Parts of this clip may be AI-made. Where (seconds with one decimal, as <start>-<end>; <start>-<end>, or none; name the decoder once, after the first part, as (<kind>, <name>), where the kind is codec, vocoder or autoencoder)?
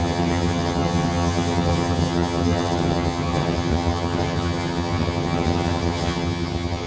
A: 0.0-6.9 (vocoder, HiFi-GAN)